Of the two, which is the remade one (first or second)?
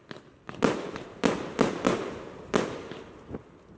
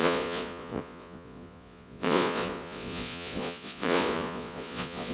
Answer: second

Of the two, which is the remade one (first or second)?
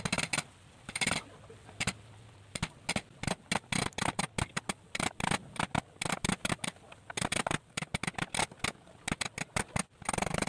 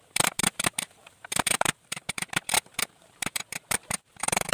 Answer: second